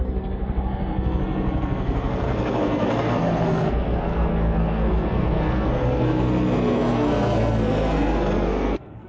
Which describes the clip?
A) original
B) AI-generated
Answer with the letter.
B